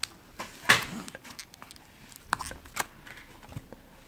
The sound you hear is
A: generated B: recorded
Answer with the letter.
B